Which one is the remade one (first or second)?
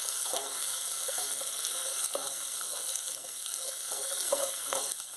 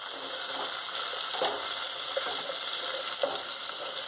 first